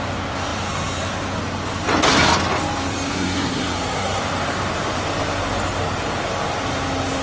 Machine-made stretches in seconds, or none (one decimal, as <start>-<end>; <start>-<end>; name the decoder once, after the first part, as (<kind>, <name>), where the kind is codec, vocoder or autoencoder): 3.1-4.2 (codec, SNAC)